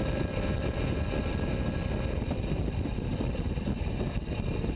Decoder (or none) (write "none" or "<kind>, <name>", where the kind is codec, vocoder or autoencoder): none